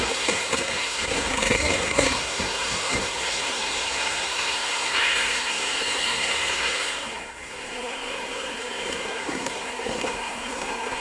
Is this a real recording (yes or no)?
no